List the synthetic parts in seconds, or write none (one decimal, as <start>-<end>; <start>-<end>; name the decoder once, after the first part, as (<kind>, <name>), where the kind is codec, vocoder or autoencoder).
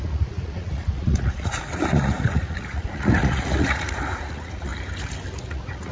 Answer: 0.0-4.7 (vocoder, Vocos); 5.4-5.9